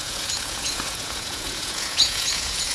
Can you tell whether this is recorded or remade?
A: remade